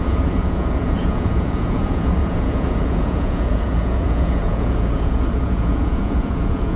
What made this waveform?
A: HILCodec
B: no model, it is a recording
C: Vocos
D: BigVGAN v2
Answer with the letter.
C